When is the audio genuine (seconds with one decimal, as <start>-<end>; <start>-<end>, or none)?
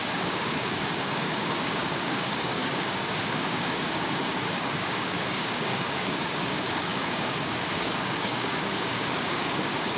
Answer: none